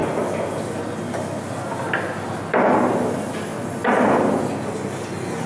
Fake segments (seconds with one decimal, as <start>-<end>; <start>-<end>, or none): none

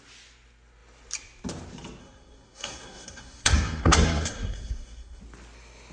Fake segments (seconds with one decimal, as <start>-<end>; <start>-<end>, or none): 2.0-5.2

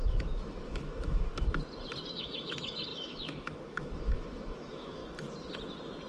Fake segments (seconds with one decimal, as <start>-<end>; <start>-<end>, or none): 0.0-1.3; 2.1-5.0

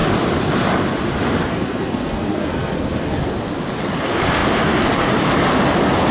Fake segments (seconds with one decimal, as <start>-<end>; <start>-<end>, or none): 1.5-3.2

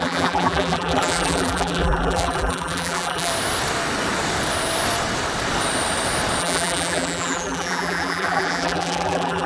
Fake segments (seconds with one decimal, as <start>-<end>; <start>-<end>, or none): 0.0-3.3; 6.4-9.5

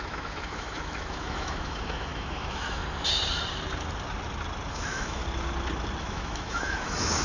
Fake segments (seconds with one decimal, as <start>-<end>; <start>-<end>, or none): 0.0-2.8; 4.7-5.2; 6.0-7.2

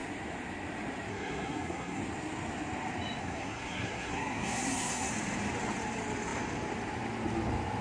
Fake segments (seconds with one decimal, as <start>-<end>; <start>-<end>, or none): 1.1-2.0; 3.2-5.1